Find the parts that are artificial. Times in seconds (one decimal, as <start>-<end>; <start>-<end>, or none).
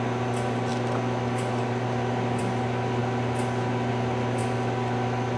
none